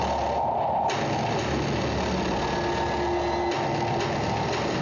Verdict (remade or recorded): recorded